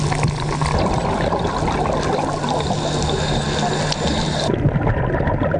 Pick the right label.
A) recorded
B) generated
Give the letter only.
A